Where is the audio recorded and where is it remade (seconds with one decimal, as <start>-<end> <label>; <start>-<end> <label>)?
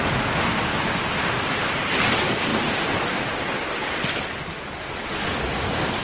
0.0-6.0 recorded